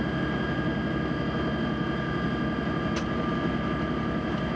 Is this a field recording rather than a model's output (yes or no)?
yes